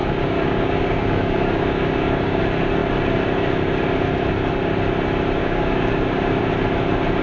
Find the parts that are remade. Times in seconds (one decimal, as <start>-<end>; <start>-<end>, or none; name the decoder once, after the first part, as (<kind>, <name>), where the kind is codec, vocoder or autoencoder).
0.0-2.4 (codec, DAC); 5.4-6.4